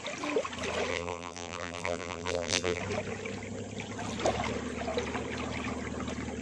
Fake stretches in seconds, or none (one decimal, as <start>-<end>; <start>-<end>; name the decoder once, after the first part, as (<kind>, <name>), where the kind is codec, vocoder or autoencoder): 0.9-2.8 (vocoder, BigVGAN v2)